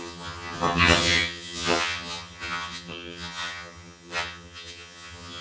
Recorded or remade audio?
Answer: remade